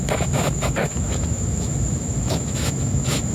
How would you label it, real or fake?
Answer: fake